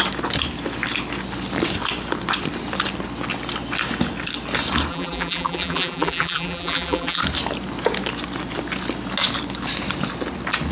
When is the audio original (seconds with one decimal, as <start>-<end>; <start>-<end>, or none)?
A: 0.0-4.9; 7.2-10.7

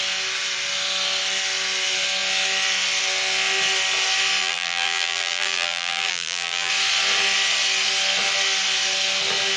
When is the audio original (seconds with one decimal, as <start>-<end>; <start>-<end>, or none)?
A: 0.0-4.4; 6.7-9.6

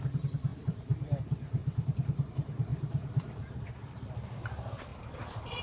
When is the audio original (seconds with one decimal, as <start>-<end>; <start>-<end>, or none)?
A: 0.0-0.5; 1.2-1.6; 2.3-2.7; 3.5-4.9

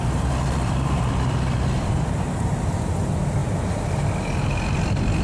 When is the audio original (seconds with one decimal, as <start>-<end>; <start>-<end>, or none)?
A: 3.4-4.3

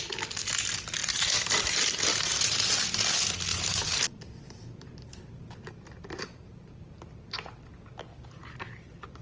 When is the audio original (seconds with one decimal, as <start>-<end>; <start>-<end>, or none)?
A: 0.0-1.0; 1.7-2.1; 2.8-3.5; 6.9-8.1

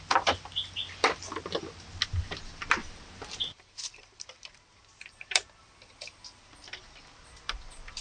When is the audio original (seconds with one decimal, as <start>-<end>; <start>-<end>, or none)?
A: 0.0-2.8; 5.6-8.0

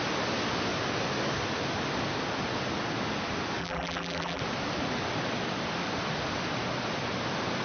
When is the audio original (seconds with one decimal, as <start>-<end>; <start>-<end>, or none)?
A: 0.0-3.6; 4.4-7.6

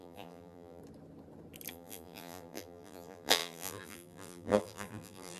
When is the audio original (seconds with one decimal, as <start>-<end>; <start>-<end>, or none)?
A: 0.8-1.7